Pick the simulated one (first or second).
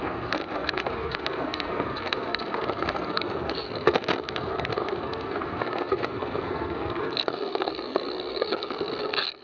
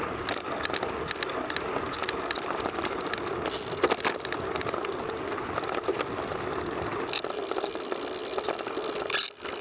first